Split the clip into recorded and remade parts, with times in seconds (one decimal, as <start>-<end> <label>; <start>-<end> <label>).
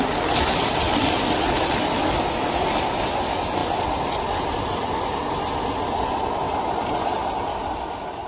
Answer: 0.0-8.3 recorded